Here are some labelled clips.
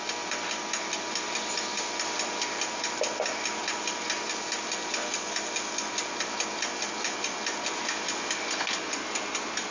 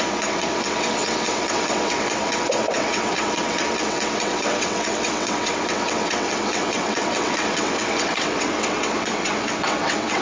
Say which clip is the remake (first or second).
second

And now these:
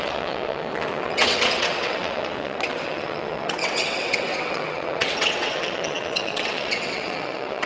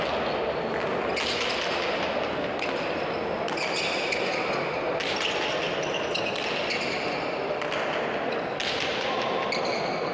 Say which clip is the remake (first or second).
first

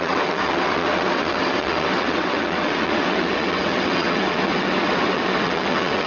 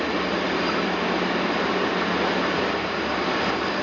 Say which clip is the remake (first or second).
first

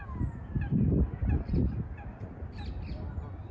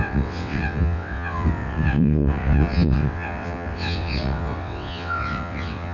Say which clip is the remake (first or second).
second